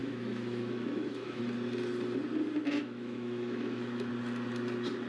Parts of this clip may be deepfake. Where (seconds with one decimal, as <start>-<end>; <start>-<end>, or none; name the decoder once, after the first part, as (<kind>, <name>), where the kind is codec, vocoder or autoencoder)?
0.0-1.4 (autoencoder, DAC-VAE); 2.8-4.1